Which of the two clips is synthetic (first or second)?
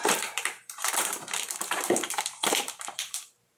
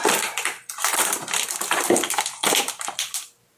first